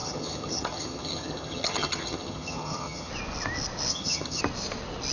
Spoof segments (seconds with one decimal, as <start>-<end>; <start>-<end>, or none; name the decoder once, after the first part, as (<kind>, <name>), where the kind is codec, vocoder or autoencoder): 0.0-3.1 (vocoder, HiFi-GAN); 3.9-4.4